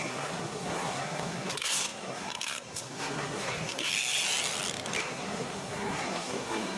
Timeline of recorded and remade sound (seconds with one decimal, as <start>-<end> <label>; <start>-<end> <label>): 0.0-3.9 remade; 3.9-5.0 recorded; 5.0-6.8 remade